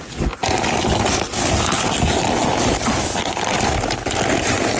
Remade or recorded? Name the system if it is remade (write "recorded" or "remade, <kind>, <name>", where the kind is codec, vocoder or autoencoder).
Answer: recorded